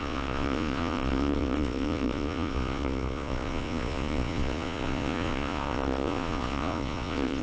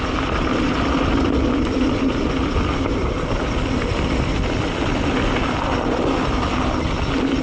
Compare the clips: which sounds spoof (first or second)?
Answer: first